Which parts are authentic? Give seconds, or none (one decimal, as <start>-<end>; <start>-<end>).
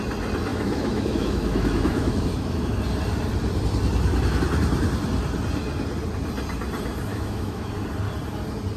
0.0-0.5; 2.8-7.1; 7.7-8.8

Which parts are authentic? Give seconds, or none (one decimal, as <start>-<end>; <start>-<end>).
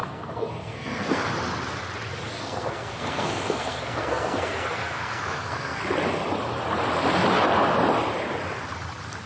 1.2-2.3; 5.8-9.3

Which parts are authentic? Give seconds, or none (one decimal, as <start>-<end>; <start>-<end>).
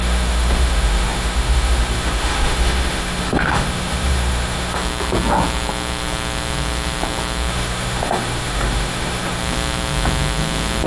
4.8-7.5; 9.4-10.9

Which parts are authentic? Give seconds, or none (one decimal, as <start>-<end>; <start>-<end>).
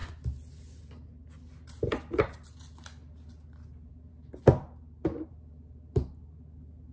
0.0-6.9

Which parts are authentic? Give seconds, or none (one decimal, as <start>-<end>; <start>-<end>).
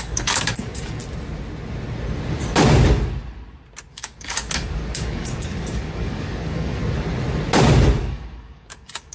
1.0-3.9; 6.8-8.0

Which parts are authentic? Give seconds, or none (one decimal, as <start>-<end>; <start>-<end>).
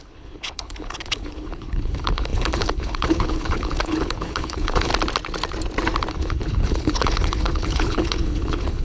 4.9-6.1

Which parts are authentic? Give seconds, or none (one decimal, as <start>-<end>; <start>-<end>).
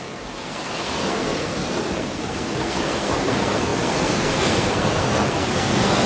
none